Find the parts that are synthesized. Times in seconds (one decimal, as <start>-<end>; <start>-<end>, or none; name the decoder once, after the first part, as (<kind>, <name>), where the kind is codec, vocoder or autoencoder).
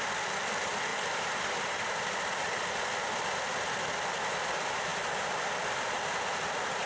0.9-3.7 (vocoder, BigVGAN v2); 4.9-5.8